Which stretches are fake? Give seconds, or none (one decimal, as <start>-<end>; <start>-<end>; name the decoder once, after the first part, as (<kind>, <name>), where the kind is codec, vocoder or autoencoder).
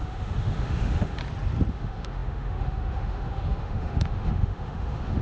0.0-1.2 (autoencoder, DAC-VAE); 1.7-5.2